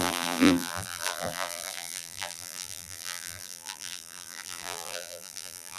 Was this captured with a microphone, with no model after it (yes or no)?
no